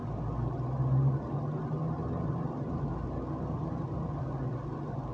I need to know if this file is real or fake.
real